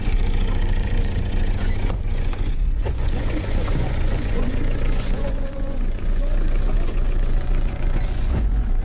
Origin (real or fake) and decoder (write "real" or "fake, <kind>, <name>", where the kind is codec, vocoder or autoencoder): fake, vocoder, Vocos